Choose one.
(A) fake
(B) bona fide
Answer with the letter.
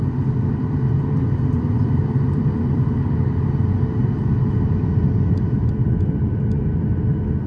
B